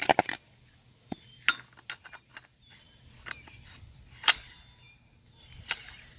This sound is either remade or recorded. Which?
recorded